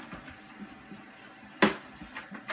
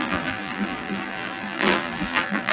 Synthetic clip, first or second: second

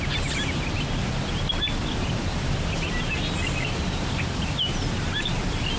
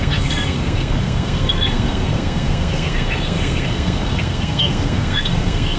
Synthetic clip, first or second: second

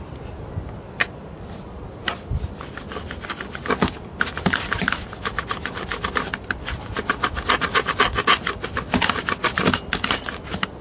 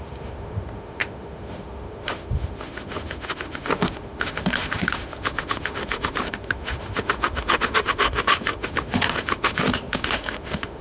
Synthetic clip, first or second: second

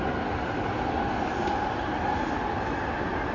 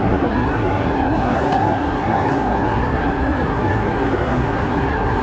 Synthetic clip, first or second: second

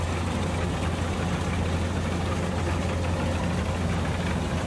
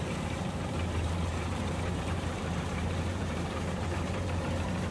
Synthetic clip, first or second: second